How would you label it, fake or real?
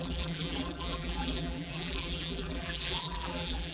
fake